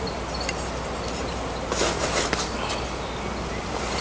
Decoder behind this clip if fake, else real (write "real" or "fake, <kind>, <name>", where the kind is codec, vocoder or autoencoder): real